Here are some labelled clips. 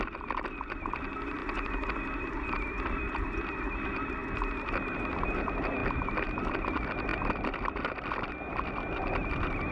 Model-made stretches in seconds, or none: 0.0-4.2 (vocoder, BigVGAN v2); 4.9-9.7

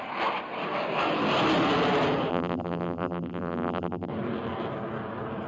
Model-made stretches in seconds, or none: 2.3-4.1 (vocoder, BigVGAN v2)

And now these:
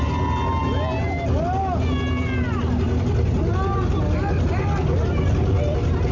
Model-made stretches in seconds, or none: none